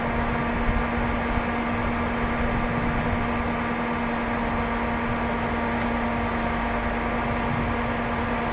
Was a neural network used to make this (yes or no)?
no